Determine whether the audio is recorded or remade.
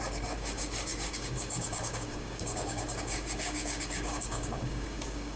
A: remade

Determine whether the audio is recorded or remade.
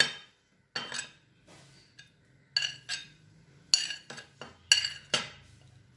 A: recorded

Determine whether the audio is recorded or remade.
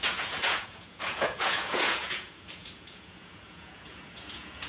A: remade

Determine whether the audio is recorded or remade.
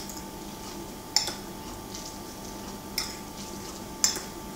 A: recorded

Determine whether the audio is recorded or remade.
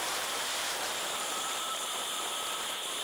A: remade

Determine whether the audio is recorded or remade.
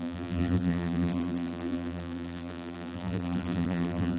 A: remade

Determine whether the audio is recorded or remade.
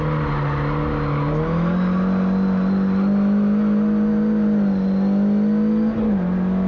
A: recorded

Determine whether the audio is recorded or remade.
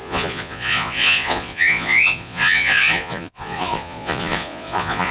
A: remade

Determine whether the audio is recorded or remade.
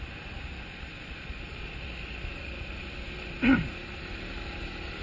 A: recorded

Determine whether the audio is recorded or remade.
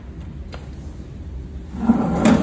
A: recorded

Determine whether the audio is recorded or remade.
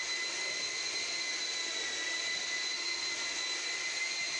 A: recorded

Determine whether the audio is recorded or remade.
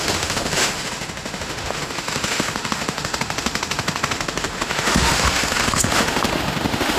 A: remade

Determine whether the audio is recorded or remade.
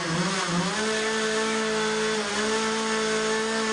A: recorded